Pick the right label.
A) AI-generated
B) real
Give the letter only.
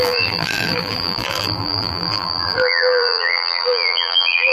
A